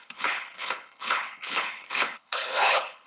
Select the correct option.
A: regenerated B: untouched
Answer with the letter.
A